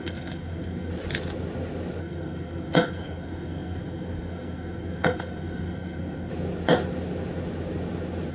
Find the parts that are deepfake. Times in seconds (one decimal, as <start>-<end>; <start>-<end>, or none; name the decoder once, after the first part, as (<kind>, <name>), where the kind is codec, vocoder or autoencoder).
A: 0.0-0.9 (codec, SNAC); 2.0-6.3